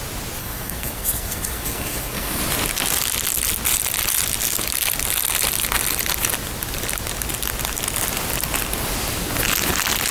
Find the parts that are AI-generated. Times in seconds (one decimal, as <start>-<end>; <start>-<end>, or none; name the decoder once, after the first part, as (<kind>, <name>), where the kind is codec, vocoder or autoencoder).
0.4-2.4 (codec, SNAC)